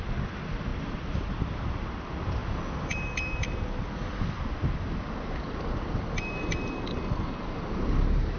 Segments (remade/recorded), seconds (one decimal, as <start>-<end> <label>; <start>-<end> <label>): 0.0-0.7 recorded; 0.7-1.9 remade; 1.9-8.4 recorded